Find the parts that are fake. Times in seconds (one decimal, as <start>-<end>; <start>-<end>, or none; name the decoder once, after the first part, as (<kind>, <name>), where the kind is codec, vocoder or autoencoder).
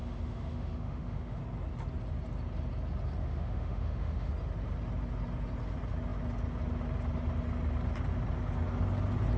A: 0.0-1.4 (autoencoder, DAC-VAE); 3.2-4.3